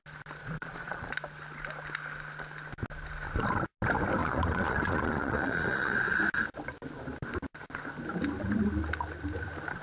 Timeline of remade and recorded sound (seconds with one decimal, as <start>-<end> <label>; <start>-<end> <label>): 0.0-0.4 recorded; 0.4-1.1 remade; 1.1-4.2 recorded; 4.2-6.0 remade; 6.0-9.8 recorded